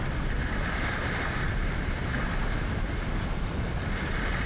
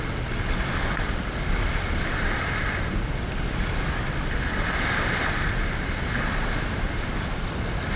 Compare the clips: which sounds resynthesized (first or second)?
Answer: first